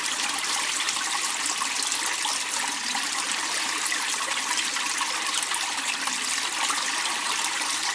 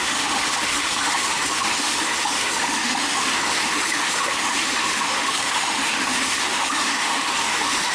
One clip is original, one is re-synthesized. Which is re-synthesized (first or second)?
second